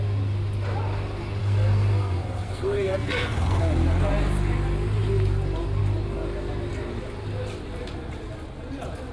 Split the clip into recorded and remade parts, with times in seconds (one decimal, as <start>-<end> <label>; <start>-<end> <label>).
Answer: 0.0-1.4 recorded; 1.4-3.6 remade; 3.6-9.1 recorded